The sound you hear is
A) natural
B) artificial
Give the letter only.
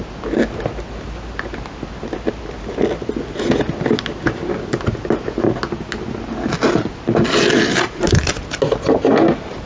A